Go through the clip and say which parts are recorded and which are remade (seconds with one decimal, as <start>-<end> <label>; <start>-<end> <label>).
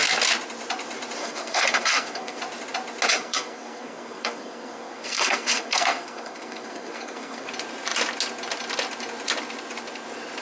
0.0-1.2 recorded; 1.2-2.4 remade; 2.4-3.1 recorded; 3.1-7.5 remade; 7.5-10.4 recorded